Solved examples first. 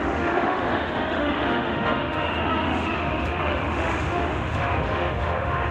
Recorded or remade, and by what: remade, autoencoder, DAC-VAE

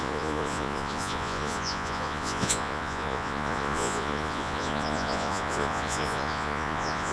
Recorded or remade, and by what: remade, vocoder, Vocos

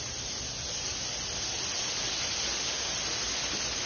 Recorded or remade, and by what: recorded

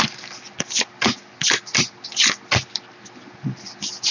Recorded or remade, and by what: recorded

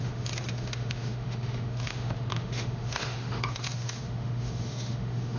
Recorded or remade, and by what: remade, autoencoder, DAC-VAE